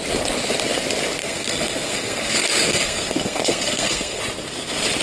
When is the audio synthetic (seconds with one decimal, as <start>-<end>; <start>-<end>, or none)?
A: 1.2-4.2